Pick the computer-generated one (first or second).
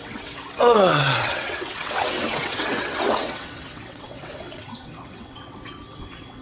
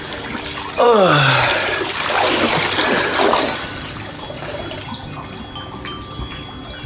first